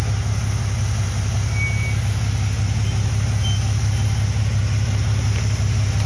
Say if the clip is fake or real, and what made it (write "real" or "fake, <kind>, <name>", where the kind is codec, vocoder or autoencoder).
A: real